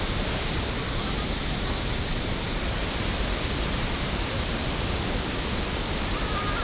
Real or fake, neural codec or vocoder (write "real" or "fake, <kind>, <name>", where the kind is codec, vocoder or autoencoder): fake, vocoder, BigVGAN v2